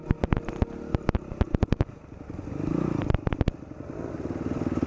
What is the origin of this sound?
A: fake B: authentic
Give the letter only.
B